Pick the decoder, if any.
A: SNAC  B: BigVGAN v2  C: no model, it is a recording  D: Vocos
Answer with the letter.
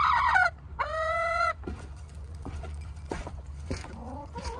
D